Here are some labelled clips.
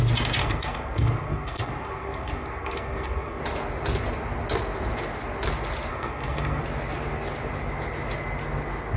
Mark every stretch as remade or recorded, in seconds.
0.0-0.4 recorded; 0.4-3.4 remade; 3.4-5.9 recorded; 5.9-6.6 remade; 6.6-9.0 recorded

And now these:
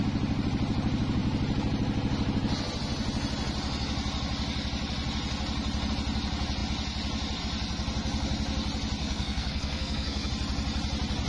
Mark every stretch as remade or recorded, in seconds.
0.0-9.0 recorded; 9.0-10.3 remade; 10.3-11.3 recorded

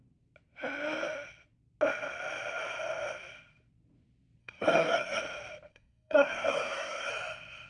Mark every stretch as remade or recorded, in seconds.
0.0-4.4 recorded; 4.4-5.2 remade; 5.2-5.7 recorded; 5.7-7.1 remade; 7.1-7.7 recorded

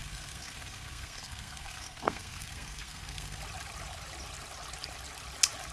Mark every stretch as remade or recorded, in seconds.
0.0-3.4 remade; 3.4-5.7 recorded

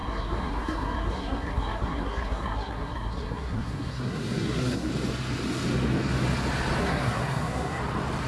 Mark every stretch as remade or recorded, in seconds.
0.0-4.9 remade; 4.9-6.8 recorded; 6.8-7.8 remade; 7.8-8.3 recorded